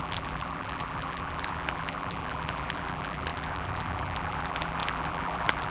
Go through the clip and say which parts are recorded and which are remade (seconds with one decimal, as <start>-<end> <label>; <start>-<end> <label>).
0.0-5.7 remade